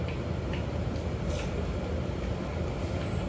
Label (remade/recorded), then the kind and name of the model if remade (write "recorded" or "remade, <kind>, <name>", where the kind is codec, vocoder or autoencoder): recorded